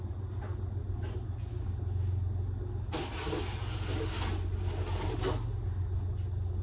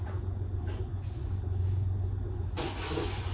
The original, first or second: first